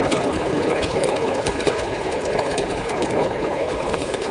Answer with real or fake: fake